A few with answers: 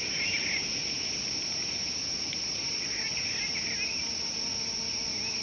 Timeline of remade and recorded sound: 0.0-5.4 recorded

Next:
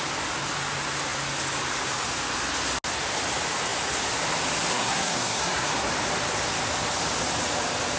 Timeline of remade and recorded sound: 0.0-4.7 recorded; 4.7-5.9 remade; 5.9-8.0 recorded

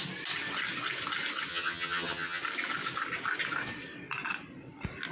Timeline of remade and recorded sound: 0.0-1.5 recorded; 1.5-2.4 remade; 2.4-5.1 recorded

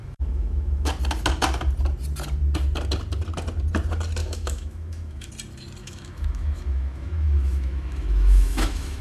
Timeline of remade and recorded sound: 0.0-0.9 remade; 0.9-4.2 recorded; 4.2-5.3 remade; 5.3-5.8 recorded; 5.8-9.0 remade

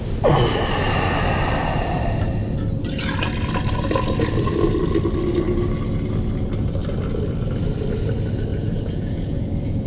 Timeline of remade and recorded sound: 0.0-8.5 recorded; 8.5-9.9 remade

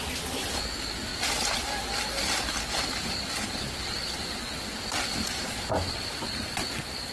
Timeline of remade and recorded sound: 0.0-7.1 recorded